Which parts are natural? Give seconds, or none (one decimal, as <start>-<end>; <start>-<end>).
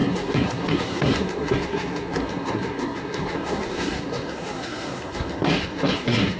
none